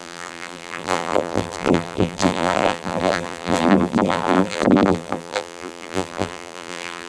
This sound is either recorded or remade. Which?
remade